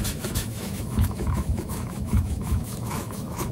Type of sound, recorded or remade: remade